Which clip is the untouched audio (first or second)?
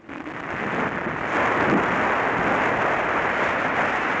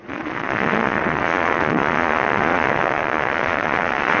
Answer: first